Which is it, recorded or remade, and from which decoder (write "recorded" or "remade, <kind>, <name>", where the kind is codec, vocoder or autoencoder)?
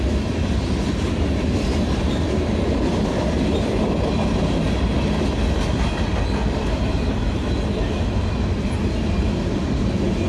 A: recorded